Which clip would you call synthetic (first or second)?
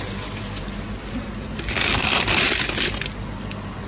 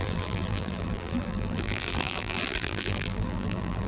second